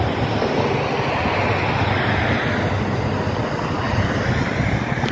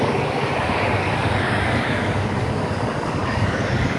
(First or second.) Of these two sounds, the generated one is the second